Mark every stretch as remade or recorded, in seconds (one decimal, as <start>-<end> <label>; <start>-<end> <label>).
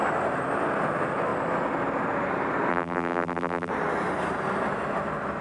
0.0-2.7 recorded; 2.7-3.7 remade; 3.7-5.4 recorded